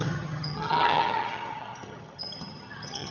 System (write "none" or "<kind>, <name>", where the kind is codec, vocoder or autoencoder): vocoder, HiFi-GAN